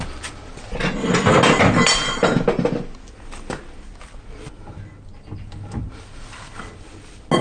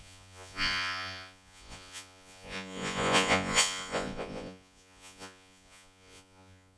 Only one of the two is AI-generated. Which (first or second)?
second